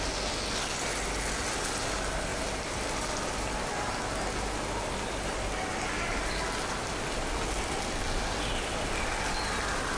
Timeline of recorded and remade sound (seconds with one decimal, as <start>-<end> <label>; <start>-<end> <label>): 0.0-10.0 recorded